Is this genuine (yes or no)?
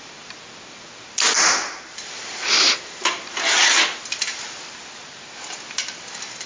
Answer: yes